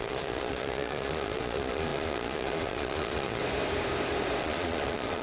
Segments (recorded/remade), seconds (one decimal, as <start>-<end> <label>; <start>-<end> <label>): 0.0-3.4 remade; 3.4-4.4 recorded; 4.4-5.2 remade